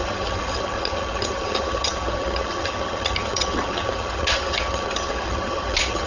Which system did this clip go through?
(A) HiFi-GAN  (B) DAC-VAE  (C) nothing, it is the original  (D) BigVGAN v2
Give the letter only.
A